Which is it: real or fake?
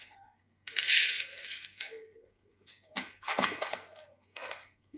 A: fake